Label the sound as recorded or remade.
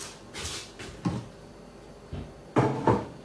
recorded